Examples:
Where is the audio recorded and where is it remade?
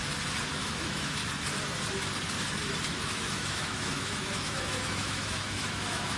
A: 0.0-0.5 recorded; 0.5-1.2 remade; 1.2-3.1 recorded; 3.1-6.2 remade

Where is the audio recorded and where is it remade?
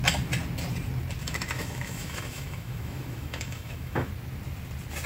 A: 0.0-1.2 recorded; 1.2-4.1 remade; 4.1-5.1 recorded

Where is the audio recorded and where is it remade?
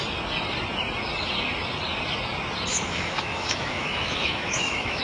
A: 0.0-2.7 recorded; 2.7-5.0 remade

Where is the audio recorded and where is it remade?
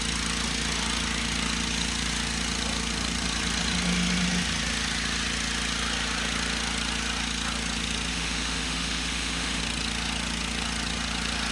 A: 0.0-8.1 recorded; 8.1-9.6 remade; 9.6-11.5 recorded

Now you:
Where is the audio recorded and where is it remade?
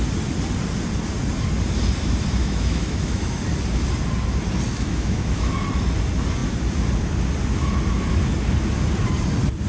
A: 0.0-2.4 recorded; 2.4-3.4 remade; 3.4-4.7 recorded; 4.7-5.5 remade; 5.5-9.7 recorded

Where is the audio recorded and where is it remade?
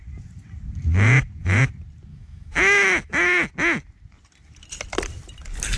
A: 0.0-2.1 recorded; 2.1-3.5 remade; 3.5-5.8 recorded